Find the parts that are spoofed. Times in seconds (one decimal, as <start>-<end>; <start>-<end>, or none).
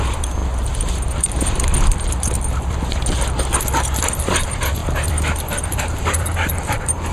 0.0-0.4; 3.6-7.1